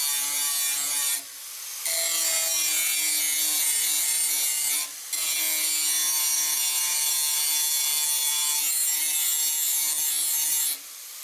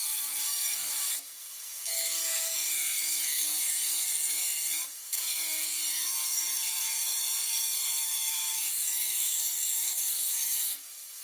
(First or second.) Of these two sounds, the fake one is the second